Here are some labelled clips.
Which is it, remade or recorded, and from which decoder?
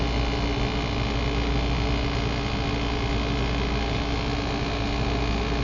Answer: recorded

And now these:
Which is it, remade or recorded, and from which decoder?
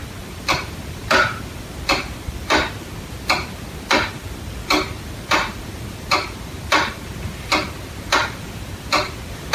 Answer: remade, vocoder, BigVGAN v2